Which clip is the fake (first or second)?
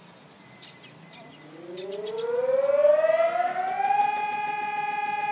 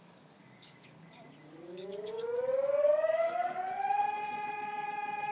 second